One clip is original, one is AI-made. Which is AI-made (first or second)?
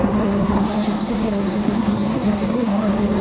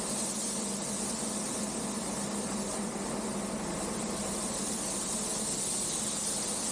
first